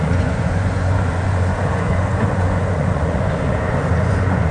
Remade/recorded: remade